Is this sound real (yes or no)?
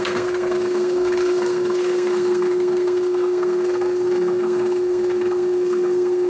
no